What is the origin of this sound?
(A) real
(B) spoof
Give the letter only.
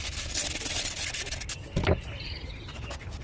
A